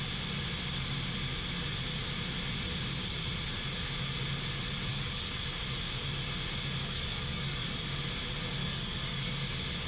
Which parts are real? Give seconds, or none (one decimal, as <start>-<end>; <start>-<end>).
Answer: 0.0-4.9; 5.4-6.8; 7.7-8.6; 9.3-9.9